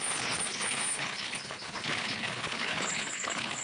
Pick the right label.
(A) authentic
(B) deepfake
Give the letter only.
B